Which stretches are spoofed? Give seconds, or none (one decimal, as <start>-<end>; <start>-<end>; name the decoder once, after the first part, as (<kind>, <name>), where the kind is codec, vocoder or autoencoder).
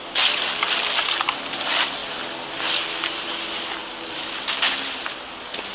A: 2.0-2.8 (vocoder, BigVGAN v2); 3.8-5.7